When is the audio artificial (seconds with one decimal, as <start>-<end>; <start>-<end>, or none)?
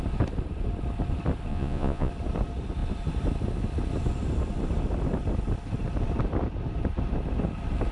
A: 1.5-2.1